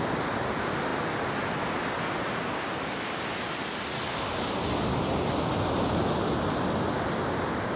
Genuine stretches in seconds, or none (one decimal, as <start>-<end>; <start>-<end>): 0.0-7.8